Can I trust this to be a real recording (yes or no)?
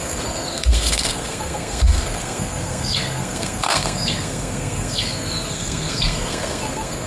no